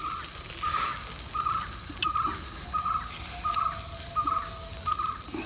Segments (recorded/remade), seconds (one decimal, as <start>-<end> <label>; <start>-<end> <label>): 0.0-5.5 recorded